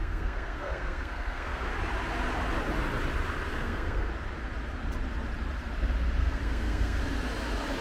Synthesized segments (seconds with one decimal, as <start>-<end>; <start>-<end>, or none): 0.0-1.7; 3.5-4.1; 6.2-7.0